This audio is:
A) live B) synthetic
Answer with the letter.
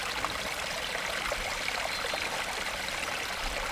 A